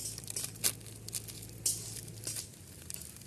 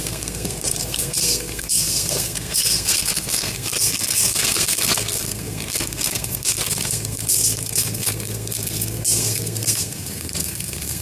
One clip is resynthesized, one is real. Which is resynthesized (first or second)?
second